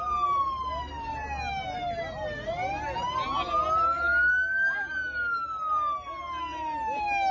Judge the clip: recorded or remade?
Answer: recorded